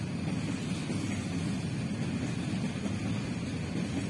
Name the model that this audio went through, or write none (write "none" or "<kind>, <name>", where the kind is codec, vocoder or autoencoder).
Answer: none